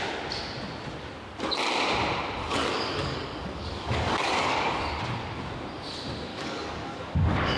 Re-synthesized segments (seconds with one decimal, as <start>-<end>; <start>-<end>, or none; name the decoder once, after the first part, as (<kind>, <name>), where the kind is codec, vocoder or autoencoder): 2.4-5.0 (codec, DAC); 6.3-7.6

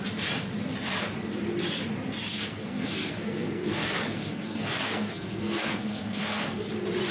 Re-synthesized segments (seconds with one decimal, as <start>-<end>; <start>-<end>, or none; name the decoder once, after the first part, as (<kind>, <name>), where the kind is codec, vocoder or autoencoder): 2.3-6.6 (codec, SNAC)

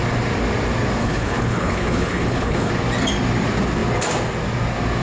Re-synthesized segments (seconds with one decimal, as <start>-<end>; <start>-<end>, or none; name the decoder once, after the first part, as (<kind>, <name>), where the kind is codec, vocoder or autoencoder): 1.0-2.7 (codec, HILCodec)

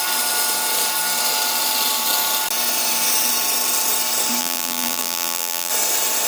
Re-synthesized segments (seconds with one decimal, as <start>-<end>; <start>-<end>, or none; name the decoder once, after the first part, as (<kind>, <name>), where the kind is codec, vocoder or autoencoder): 4.4-5.7 (vocoder, BigVGAN v2)

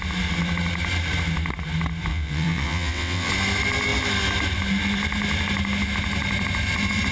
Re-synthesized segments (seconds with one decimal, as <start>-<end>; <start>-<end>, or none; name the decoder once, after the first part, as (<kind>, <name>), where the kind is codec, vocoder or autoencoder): 2.1-3.3 (vocoder, WaveNeXt)